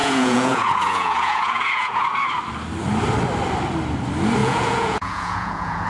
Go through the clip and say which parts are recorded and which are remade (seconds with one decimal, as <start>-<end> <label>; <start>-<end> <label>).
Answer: 0.0-2.1 remade; 2.1-4.4 recorded; 4.4-5.9 remade